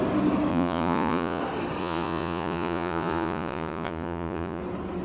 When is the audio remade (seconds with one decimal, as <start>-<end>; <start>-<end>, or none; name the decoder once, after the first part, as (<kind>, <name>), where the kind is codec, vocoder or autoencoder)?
0.5-1.4 (vocoder, Vocos); 1.8-4.6